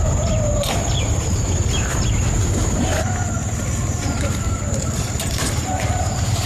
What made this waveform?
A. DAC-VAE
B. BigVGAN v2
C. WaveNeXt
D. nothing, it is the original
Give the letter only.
B